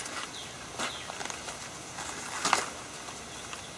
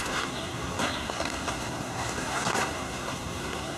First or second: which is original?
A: first